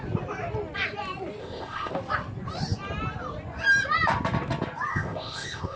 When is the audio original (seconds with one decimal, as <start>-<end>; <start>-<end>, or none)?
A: 0.0-1.4; 1.9-4.9